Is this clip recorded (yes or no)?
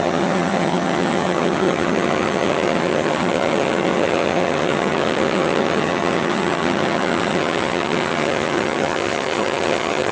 no